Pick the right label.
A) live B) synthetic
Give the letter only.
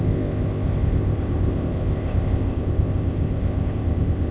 B